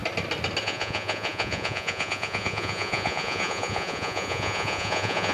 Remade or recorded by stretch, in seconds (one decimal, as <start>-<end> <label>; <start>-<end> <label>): 0.0-0.6 recorded; 0.6-5.3 remade